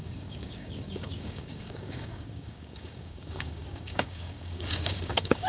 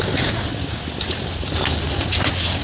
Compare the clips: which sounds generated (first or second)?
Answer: first